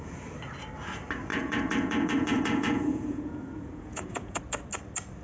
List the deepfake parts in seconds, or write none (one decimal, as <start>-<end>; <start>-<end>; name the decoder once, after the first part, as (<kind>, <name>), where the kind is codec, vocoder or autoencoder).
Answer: 1.3-4.4 (vocoder, Vocos)